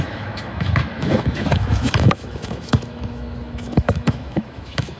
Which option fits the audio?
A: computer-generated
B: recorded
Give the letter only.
A